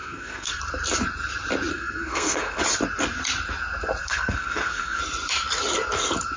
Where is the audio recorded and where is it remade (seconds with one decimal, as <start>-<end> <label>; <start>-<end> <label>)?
0.0-0.6 remade; 0.6-1.7 recorded; 1.7-2.6 remade; 2.6-4.0 recorded; 4.0-5.0 remade; 5.0-6.4 recorded